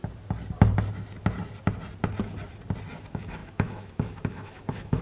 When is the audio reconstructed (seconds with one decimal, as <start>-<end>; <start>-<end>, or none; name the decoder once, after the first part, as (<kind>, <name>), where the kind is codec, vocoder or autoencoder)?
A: 3.0-5.0 (autoencoder, DAC-VAE)